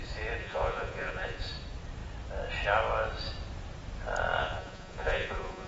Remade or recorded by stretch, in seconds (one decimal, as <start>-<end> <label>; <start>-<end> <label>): 0.0-0.4 recorded; 0.4-1.5 remade; 1.5-4.4 recorded; 4.4-5.7 remade

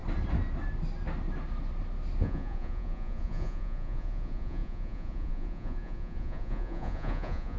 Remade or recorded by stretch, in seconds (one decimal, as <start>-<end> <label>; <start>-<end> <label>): 0.0-2.2 recorded; 2.2-7.6 remade

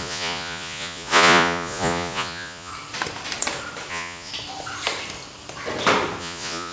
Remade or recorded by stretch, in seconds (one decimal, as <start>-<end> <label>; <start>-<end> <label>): 0.0-2.7 remade; 2.7-3.9 recorded; 3.9-4.3 remade; 4.3-6.2 recorded; 6.2-6.7 remade

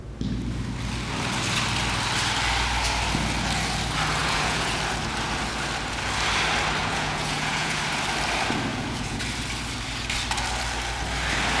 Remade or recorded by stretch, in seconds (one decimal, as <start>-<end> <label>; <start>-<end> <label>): 0.0-4.2 recorded; 4.2-4.8 remade; 4.8-6.8 recorded; 6.8-7.8 remade; 7.8-8.7 recorded; 8.7-9.2 remade; 9.2-11.6 recorded

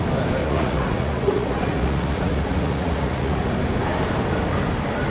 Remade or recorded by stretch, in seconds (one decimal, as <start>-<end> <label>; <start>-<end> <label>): 0.0-0.4 recorded; 0.4-3.5 remade; 3.5-5.1 recorded